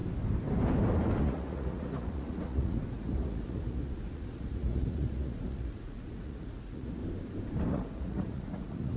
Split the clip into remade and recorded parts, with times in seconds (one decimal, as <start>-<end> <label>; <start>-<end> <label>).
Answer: 0.0-1.2 recorded; 1.2-7.0 remade; 7.0-7.7 recorded; 7.7-9.0 remade